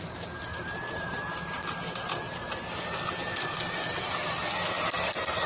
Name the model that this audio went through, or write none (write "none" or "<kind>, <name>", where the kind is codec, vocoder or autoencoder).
none